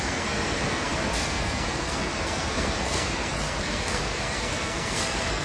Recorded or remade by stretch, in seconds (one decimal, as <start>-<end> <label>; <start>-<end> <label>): 0.0-5.4 remade